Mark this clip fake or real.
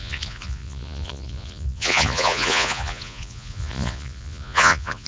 fake